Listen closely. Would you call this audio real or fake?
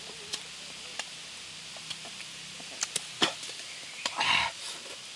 real